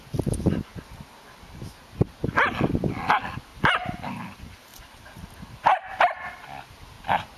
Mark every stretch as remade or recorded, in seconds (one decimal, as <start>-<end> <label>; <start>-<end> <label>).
0.0-3.5 recorded; 3.5-4.1 remade; 4.1-4.7 recorded; 4.7-5.9 remade; 5.9-7.4 recorded